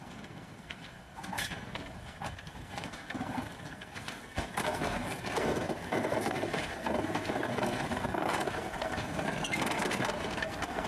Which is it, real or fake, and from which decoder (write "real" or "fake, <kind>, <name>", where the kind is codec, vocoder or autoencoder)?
fake, codec, SNAC